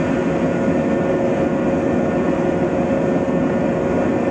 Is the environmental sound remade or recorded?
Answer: recorded